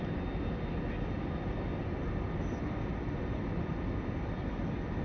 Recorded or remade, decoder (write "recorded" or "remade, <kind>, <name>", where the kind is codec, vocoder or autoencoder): recorded